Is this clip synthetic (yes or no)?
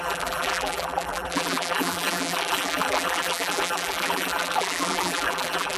yes